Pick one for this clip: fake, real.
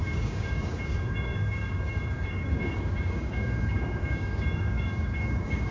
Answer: fake